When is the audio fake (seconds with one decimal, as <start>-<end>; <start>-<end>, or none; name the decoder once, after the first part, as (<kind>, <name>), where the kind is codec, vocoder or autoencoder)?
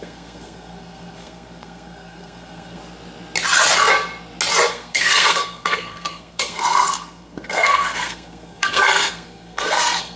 0.0-2.8 (codec, SNAC); 4.7-10.2